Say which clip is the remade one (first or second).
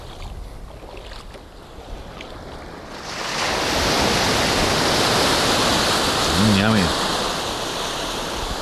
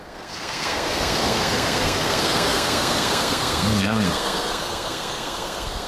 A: second